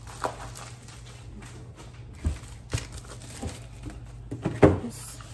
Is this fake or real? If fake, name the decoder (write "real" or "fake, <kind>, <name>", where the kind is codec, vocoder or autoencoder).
real